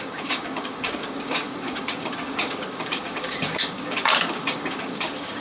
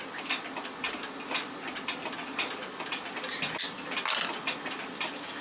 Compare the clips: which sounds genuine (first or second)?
second